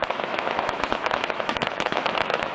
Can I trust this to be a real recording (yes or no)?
no